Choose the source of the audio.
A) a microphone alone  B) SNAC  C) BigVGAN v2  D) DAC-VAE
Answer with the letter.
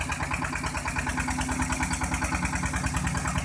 A